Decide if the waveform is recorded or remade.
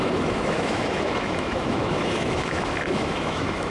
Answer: remade